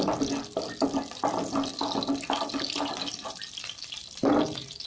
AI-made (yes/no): no